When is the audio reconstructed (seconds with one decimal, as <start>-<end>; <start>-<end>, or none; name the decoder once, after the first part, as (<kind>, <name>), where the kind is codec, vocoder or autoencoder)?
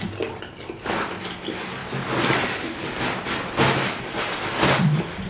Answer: none